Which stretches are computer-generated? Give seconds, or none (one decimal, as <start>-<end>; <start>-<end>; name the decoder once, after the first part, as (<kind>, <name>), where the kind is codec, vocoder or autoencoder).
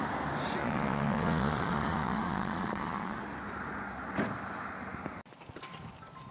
0.6-3.2 (vocoder, Vocos)